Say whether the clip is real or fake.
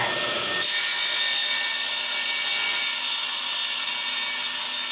real